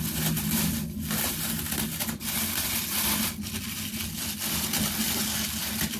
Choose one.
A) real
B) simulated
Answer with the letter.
A